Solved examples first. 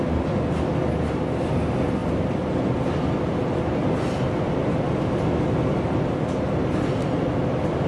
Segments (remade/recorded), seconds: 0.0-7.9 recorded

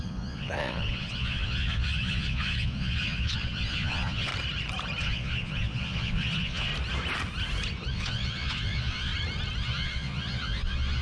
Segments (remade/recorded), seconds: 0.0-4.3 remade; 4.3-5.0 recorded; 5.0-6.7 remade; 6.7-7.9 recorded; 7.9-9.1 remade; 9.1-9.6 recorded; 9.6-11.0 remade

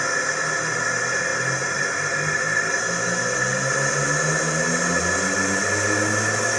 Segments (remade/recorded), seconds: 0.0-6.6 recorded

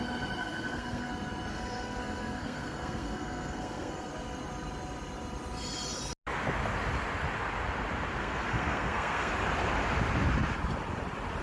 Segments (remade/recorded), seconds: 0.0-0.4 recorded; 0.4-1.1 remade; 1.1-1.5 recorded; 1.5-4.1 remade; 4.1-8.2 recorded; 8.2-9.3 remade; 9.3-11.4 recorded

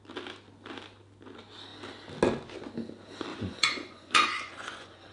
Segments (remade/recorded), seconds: 0.0-3.3 recorded; 3.3-5.1 remade

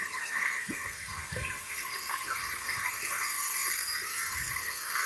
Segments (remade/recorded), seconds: 0.0-5.1 remade